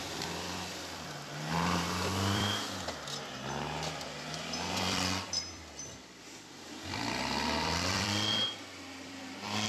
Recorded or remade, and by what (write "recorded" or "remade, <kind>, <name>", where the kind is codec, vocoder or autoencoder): remade, vocoder, BigVGAN v2